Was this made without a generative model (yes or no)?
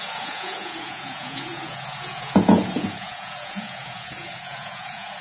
no